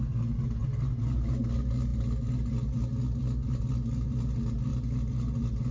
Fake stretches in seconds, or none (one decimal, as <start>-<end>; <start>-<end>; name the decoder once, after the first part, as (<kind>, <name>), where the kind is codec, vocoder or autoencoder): none